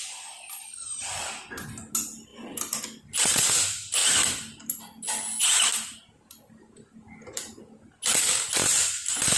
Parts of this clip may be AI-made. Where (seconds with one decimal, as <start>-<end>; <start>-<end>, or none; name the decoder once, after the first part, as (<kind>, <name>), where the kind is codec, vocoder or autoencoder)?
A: none